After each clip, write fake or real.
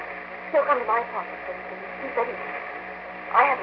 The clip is real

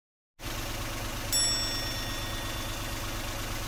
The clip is real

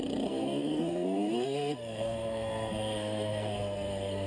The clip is fake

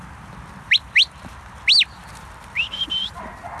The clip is real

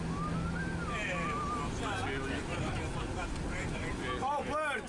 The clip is real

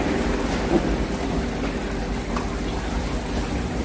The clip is real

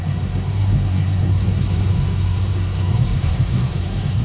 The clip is fake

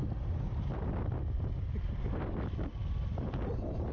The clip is real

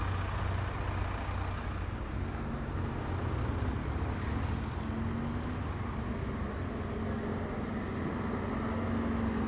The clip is real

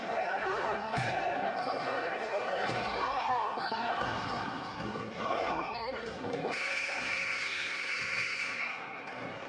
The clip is fake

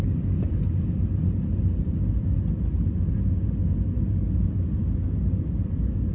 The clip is real